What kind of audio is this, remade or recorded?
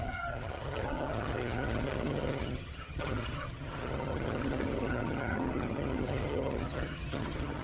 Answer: remade